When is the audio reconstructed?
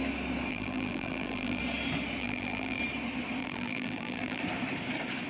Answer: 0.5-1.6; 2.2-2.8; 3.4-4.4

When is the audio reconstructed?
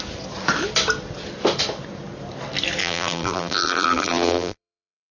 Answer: 2.8-5.1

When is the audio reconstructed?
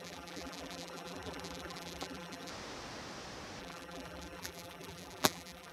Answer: 0.0-2.5; 3.6-5.7